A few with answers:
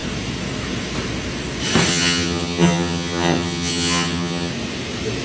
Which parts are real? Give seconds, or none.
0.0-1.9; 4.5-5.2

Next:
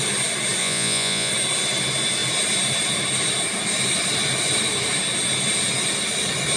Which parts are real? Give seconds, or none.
0.0-0.6; 1.3-6.6

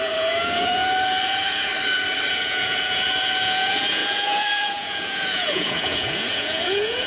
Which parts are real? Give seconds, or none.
1.7-2.3

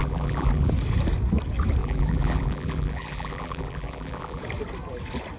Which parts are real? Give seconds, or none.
0.7-1.8; 4.4-5.4

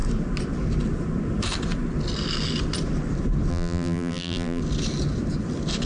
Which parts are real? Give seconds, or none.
0.0-3.5; 4.6-5.9